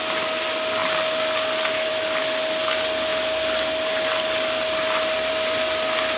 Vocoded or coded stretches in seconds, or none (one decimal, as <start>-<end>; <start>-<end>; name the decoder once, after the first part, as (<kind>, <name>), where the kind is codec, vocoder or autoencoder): 0.8-1.9 (vocoder, BigVGAN v2)